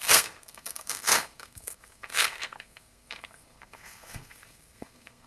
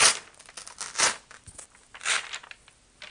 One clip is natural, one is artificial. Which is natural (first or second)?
second